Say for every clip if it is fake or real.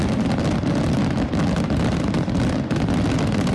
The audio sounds real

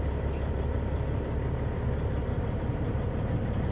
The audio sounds real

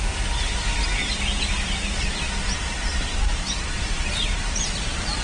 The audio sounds fake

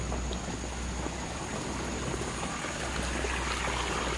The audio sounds real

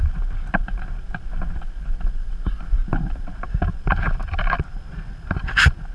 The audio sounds real